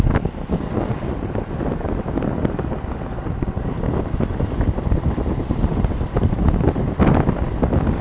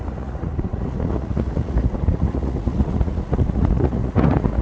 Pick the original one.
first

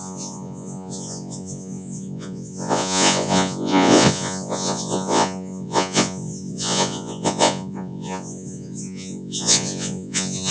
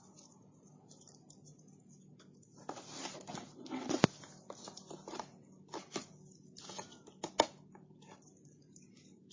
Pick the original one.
second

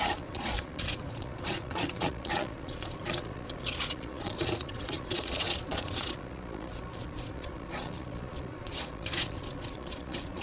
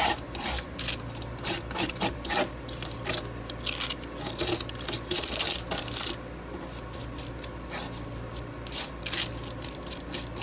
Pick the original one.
second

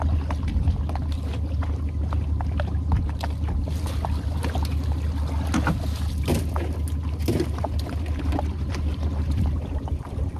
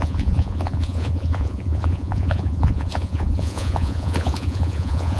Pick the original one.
first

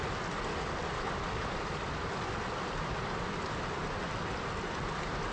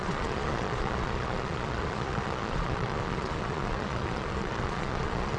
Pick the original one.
first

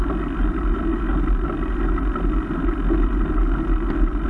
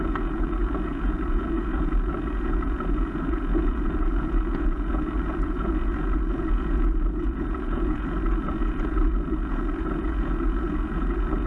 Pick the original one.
first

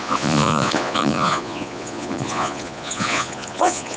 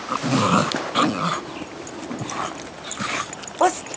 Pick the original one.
second